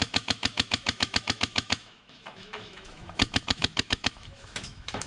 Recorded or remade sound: remade